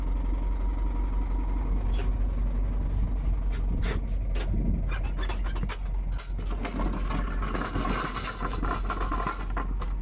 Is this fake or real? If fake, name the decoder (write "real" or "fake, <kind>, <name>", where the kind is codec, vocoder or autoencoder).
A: real